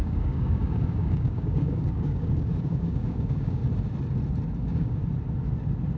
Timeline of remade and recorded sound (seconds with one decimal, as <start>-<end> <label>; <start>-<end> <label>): 0.0-3.6 remade; 3.6-4.6 recorded; 4.6-5.0 remade; 5.0-6.0 recorded

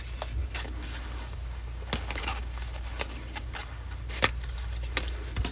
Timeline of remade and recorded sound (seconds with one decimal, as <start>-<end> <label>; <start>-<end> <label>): 0.0-5.5 recorded

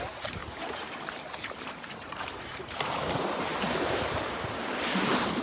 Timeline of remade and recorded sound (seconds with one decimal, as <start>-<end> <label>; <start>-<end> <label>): 0.0-5.4 remade

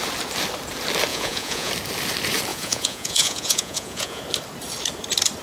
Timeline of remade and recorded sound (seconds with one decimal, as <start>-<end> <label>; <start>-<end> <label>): 0.0-1.1 recorded; 1.1-1.7 remade; 1.7-2.5 recorded; 2.5-4.2 remade; 4.2-5.4 recorded